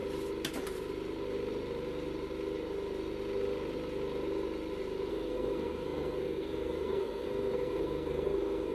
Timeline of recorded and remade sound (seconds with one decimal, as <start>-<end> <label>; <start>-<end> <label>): 0.0-5.1 recorded; 5.1-8.7 remade